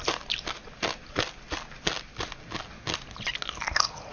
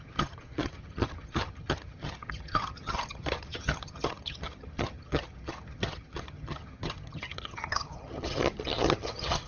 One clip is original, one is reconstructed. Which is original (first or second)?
first